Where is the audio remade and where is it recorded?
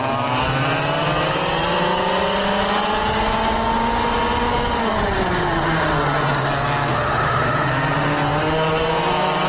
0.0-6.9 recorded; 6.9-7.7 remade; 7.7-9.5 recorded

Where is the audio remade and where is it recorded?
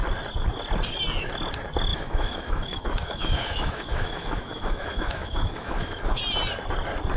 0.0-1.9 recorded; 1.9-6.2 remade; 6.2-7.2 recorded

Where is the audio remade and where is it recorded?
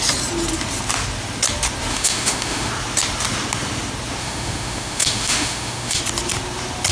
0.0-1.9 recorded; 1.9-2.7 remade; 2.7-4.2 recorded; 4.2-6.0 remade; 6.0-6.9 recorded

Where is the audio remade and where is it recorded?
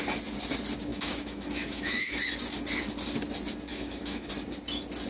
0.0-0.9 recorded; 0.9-2.2 remade; 2.2-3.7 recorded; 3.7-4.3 remade; 4.3-5.1 recorded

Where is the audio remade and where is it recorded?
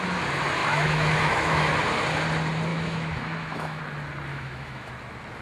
0.0-0.6 recorded; 0.6-1.6 remade; 1.6-2.7 recorded; 2.7-3.8 remade; 3.8-4.3 recorded; 4.3-4.9 remade; 4.9-5.4 recorded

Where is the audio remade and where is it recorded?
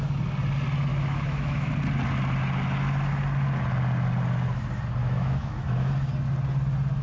0.0-0.9 recorded; 0.9-1.7 remade; 1.7-5.0 recorded; 5.0-5.9 remade; 5.9-7.0 recorded